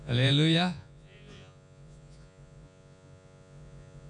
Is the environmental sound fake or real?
fake